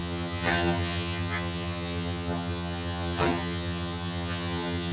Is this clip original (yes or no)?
no